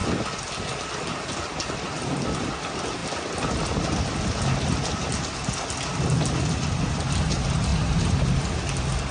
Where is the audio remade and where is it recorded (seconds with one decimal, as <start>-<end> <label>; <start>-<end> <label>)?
0.0-9.1 recorded